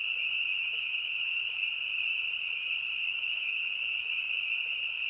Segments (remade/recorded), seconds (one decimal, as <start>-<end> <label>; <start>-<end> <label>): 0.0-0.5 recorded; 0.5-1.4 remade; 1.4-3.1 recorded; 3.1-3.6 remade; 3.6-5.1 recorded